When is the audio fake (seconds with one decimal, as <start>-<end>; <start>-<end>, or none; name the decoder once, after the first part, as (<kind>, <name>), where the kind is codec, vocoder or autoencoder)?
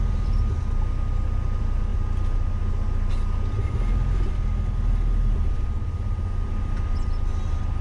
none